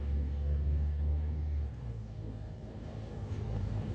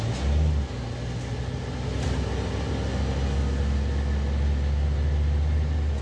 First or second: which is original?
second